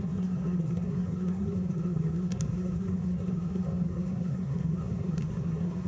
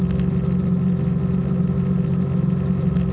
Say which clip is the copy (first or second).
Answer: first